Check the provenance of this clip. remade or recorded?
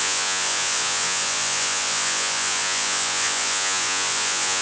remade